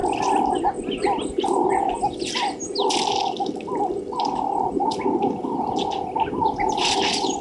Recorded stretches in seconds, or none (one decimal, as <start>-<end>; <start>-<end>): 2.0-7.4